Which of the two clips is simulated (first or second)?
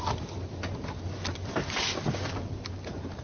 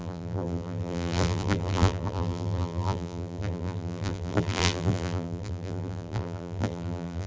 second